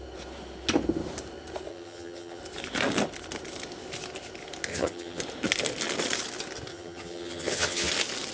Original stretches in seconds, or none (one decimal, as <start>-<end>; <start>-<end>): 0.0-1.7; 2.4-4.7; 5.2-6.7; 7.9-8.3